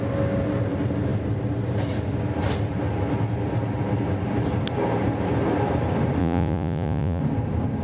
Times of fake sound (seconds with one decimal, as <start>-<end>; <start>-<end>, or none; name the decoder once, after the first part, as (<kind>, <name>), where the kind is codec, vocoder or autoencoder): 6.2-7.2 (vocoder, Vocos)